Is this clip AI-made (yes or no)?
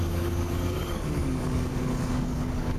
yes